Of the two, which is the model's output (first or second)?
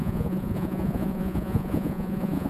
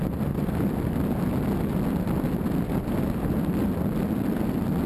first